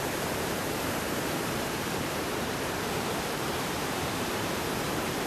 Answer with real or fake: fake